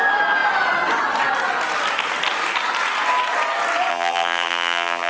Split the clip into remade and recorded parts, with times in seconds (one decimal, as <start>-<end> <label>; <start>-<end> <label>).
0.0-3.9 recorded; 3.9-5.1 remade